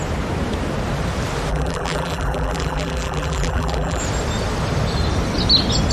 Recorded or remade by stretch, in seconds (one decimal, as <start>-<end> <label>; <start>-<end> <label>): 0.0-1.5 recorded; 1.5-4.0 remade; 4.0-5.9 recorded